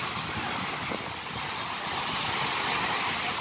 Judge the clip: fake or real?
real